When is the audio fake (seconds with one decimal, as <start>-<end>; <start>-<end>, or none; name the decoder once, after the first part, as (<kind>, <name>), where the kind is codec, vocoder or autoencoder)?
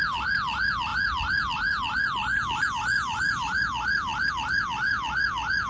none